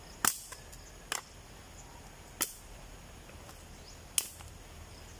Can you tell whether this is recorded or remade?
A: recorded